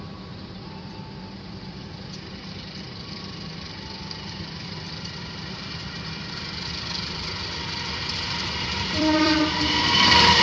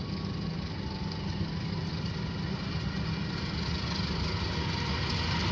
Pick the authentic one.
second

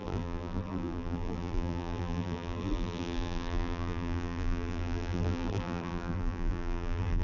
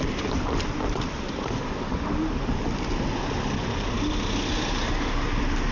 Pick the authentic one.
second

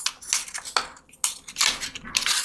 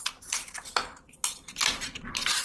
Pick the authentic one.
first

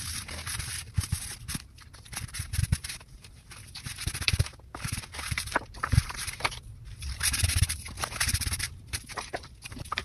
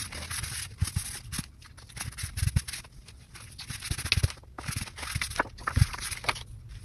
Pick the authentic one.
second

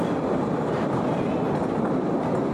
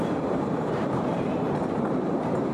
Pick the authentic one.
first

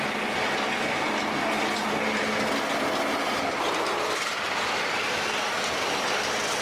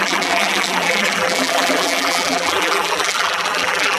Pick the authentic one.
first